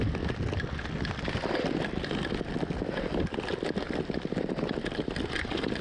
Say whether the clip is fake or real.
real